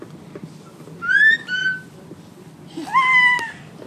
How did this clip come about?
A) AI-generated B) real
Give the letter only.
B